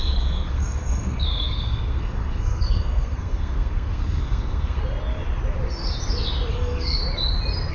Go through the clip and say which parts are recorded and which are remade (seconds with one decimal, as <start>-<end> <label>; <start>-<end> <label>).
0.0-4.8 remade; 4.8-6.5 recorded; 6.5-7.0 remade; 7.0-7.7 recorded

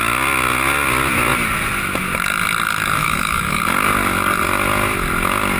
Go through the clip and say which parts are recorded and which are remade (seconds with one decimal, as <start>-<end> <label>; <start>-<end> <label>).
0.0-3.0 recorded; 3.0-3.6 remade; 3.6-5.6 recorded

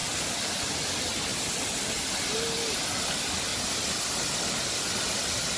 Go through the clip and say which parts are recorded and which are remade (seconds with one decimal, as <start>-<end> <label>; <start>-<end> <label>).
0.0-0.8 remade; 0.8-5.6 recorded

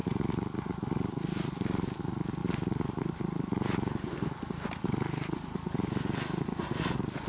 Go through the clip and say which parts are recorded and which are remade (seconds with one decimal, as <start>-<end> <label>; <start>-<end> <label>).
0.0-7.3 recorded

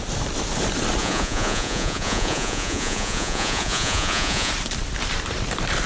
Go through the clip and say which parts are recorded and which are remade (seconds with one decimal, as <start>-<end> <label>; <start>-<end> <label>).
0.0-1.0 recorded; 1.0-4.5 remade; 4.5-5.9 recorded

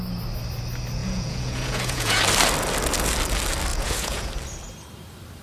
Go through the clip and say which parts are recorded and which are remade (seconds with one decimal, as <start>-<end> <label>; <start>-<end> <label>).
0.0-1.0 recorded; 1.0-2.2 remade; 2.2-3.7 recorded; 3.7-4.3 remade; 4.3-5.4 recorded